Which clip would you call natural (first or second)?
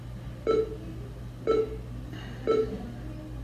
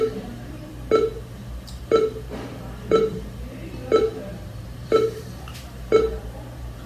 first